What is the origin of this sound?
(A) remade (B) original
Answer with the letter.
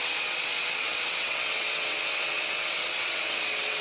A